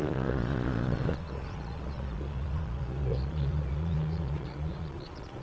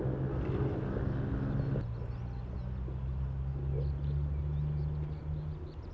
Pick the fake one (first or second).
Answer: first